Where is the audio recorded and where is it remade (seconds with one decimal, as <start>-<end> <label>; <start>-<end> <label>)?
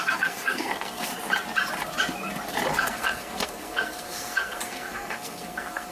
0.0-1.1 remade; 1.1-2.7 recorded; 2.7-5.9 remade